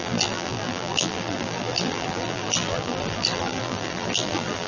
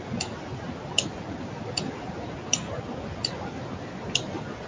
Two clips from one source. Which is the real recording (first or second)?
second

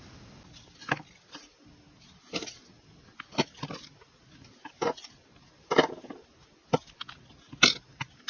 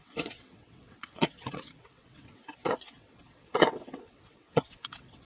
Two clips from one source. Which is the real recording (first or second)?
first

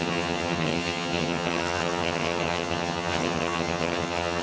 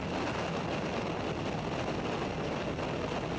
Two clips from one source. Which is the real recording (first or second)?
second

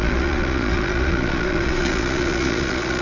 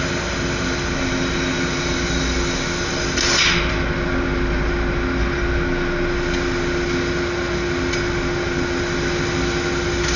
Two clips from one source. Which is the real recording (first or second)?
second